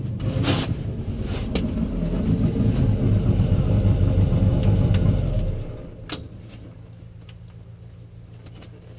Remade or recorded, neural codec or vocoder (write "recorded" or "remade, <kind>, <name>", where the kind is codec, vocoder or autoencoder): recorded